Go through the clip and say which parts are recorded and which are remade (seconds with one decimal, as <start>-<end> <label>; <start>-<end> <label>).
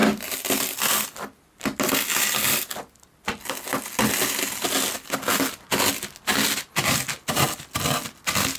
0.0-8.6 recorded